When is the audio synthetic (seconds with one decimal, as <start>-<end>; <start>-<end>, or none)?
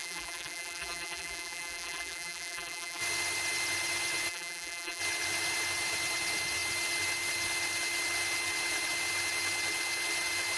0.0-3.0; 4.3-5.0